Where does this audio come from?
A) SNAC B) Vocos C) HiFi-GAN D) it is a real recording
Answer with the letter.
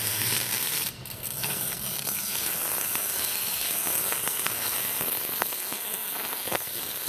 A